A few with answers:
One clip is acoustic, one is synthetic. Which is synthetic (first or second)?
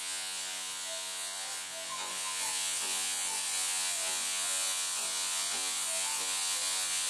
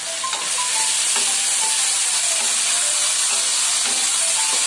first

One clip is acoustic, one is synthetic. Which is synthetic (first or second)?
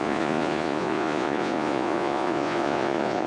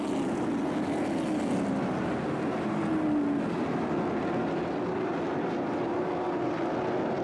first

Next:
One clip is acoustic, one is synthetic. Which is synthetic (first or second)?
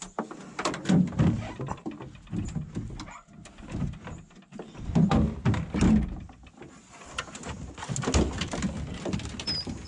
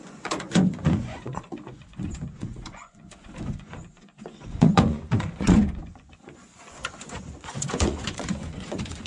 second